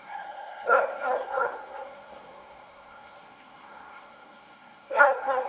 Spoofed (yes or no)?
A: yes